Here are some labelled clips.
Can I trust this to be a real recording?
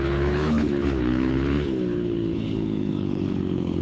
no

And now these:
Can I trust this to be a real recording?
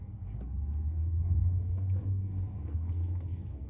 no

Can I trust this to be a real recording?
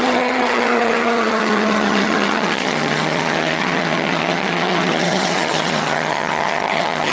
no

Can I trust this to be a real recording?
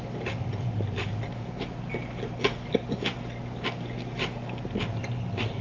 yes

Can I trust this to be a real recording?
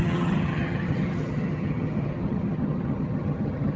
no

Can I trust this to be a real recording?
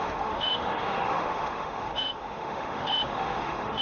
no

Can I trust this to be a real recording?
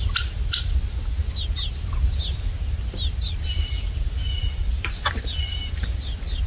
yes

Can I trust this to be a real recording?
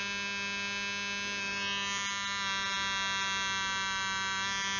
yes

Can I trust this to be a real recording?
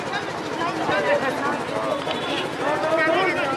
yes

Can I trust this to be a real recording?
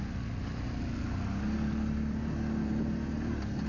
yes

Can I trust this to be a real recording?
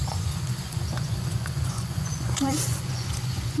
no